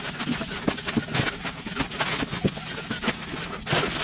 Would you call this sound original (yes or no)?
yes